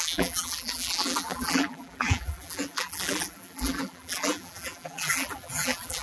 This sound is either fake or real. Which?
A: fake